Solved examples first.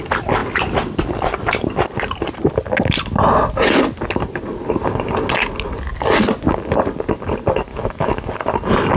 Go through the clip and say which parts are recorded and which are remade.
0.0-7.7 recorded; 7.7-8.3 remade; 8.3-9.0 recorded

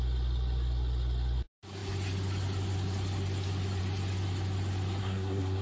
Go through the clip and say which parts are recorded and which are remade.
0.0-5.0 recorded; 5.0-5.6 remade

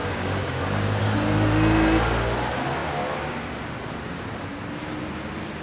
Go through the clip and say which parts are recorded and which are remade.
0.0-1.0 remade; 1.0-5.6 recorded

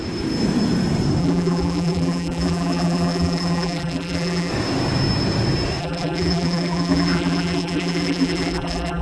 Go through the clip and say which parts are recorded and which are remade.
0.0-1.2 recorded; 1.2-4.5 remade; 4.5-5.8 recorded; 5.8-9.0 remade